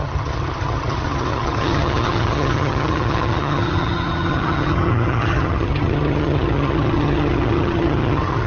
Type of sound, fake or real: fake